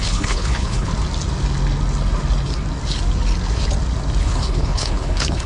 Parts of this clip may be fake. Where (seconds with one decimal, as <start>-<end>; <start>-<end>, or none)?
0.0-0.9; 4.2-5.5